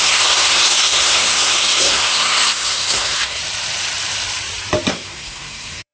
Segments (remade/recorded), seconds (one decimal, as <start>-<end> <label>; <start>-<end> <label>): 0.0-3.4 remade; 3.4-4.9 recorded; 4.9-5.9 remade